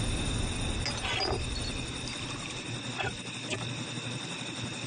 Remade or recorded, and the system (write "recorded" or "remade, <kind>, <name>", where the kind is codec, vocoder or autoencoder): recorded